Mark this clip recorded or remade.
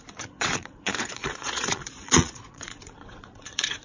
remade